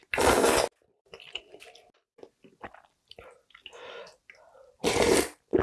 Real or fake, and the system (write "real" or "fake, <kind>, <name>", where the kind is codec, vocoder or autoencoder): real